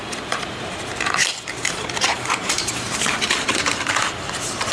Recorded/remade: remade